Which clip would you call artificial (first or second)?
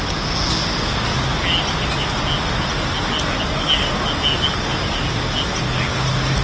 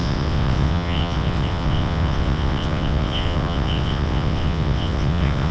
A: second